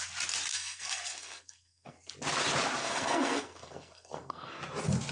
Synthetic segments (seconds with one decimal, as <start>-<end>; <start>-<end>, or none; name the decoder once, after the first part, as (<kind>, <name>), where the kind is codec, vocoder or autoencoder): 0.5-2.1 (codec, SNAC); 2.8-4.6